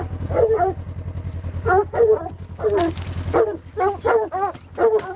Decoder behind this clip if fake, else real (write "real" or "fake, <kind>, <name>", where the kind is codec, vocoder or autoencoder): real